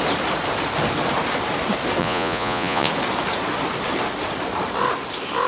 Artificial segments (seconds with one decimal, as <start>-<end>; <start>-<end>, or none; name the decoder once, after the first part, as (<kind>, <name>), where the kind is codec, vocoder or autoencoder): 2.0-2.9 (vocoder, Vocos)